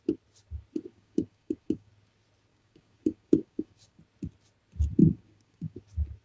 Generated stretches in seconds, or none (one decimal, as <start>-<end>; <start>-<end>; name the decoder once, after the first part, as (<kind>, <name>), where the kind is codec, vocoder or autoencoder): 0.9-1.9 (codec, DAC); 2.5-4.0; 5.0-5.8